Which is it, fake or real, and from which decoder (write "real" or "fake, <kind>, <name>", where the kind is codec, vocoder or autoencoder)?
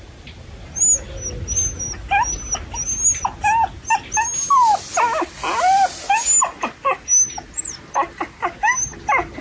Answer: real